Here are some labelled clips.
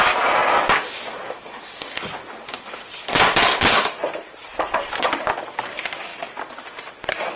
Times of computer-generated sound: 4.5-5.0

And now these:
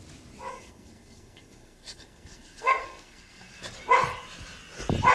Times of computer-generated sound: 0.5-3.6

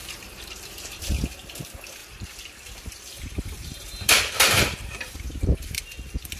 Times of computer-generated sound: 0.0-1.0; 2.0-5.8